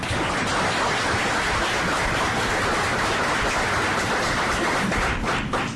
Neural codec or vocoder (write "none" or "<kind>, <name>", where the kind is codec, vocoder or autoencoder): none